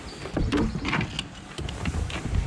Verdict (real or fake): real